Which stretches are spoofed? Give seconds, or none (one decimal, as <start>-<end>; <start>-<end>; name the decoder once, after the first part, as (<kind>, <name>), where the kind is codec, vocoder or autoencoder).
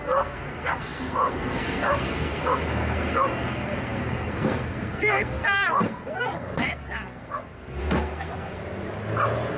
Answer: 0.0-8.6 (codec, SNAC)